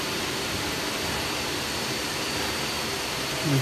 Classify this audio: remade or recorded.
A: remade